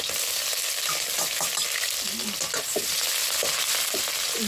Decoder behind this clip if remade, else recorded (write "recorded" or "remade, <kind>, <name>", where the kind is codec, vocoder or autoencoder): recorded